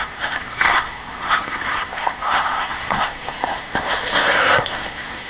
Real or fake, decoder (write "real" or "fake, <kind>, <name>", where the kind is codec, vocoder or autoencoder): fake, codec, SNAC